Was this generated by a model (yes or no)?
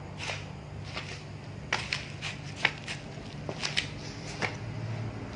no